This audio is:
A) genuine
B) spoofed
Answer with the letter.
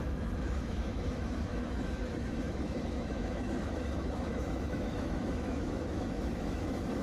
B